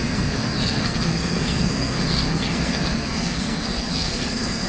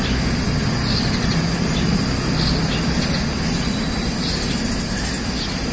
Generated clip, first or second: first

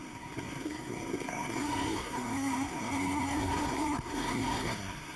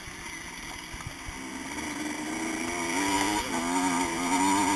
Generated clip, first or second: first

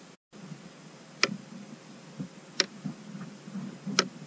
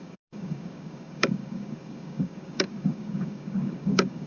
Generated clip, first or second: second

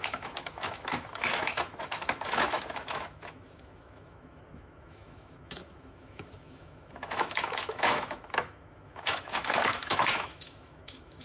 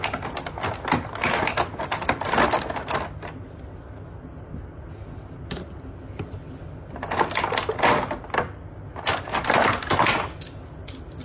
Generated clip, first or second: first